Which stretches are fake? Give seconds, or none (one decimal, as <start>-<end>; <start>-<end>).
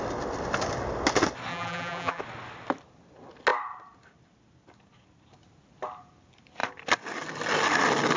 1.5-2.2